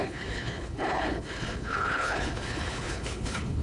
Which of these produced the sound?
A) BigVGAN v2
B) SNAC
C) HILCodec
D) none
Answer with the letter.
C